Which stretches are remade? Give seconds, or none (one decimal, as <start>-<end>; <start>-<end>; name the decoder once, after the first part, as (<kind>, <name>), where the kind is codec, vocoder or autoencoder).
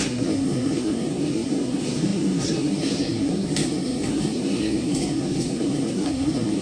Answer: 0.0-6.6 (codec, SNAC)